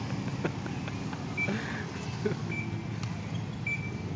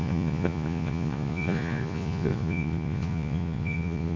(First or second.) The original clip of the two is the first